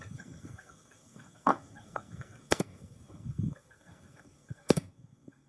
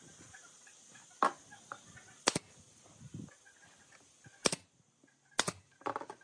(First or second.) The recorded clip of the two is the second